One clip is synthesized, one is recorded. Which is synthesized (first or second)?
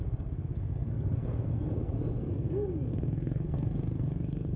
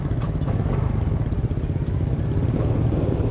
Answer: first